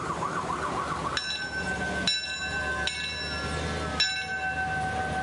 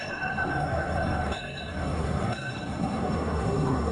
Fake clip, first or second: second